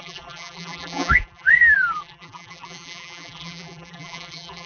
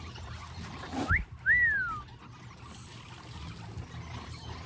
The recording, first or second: second